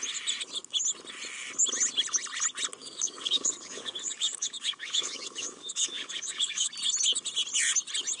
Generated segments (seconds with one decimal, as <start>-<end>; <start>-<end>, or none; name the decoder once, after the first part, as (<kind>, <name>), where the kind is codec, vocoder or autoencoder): 2.8-6.7 (codec, DAC)